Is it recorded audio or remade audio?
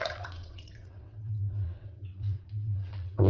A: remade